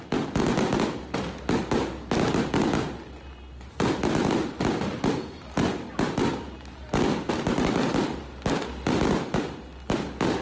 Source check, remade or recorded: recorded